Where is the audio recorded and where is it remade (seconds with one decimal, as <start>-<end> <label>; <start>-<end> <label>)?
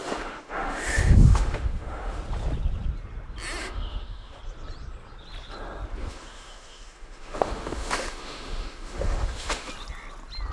0.0-2.2 remade; 2.2-3.6 recorded; 3.6-4.4 remade; 4.4-6.0 recorded; 6.0-9.7 remade; 9.7-10.5 recorded